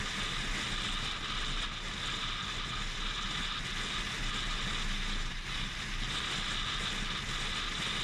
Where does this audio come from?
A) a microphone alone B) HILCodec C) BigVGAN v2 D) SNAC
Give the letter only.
A